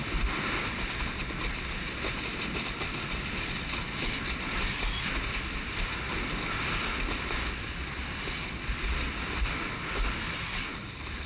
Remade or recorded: recorded